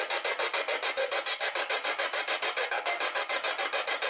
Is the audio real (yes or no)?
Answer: yes